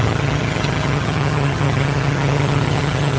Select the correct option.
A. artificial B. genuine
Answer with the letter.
A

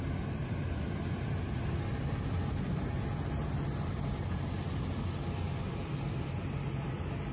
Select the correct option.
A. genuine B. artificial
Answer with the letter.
A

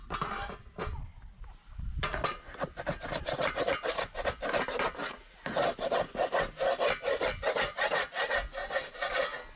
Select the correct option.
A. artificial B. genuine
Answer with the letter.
B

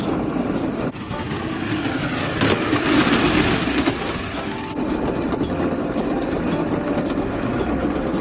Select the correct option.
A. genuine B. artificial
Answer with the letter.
A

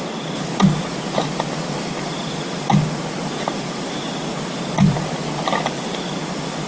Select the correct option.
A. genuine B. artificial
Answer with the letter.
A